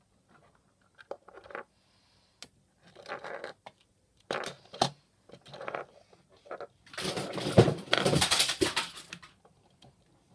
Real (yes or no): yes